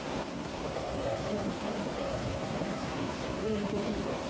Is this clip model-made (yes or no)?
yes